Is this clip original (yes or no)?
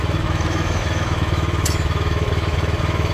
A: no